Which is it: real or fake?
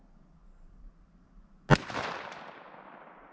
real